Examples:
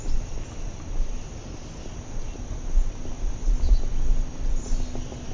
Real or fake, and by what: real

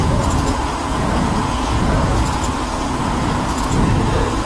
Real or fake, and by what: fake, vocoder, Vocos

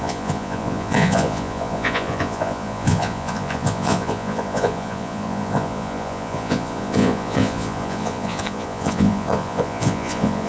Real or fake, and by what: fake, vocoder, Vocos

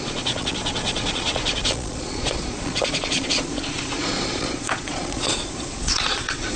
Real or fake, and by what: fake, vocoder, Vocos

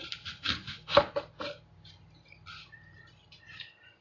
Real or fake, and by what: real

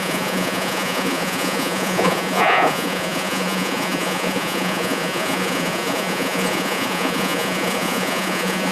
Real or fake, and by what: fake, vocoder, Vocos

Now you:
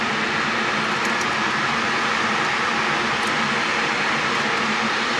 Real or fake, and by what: real